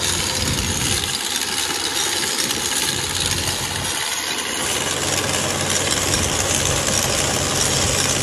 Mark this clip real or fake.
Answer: real